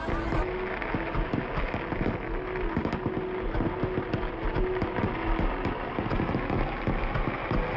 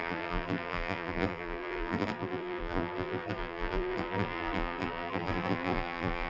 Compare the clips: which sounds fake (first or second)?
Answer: second